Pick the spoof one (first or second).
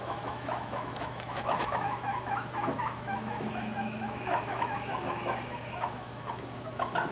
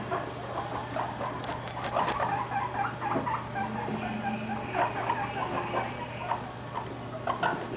first